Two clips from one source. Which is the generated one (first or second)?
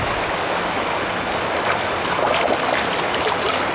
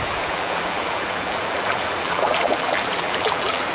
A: second